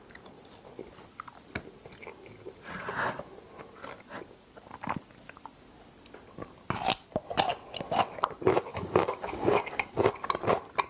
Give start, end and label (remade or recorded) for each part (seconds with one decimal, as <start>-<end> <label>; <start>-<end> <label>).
0.0-8.7 recorded; 8.7-10.1 remade; 10.1-10.9 recorded